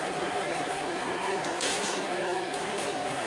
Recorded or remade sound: remade